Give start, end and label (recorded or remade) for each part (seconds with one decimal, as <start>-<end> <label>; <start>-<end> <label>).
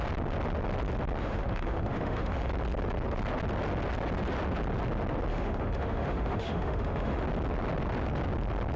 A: 0.0-1.2 recorded; 1.2-2.5 remade; 2.5-5.3 recorded; 5.3-7.2 remade; 7.2-8.8 recorded